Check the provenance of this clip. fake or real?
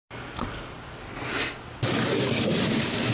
real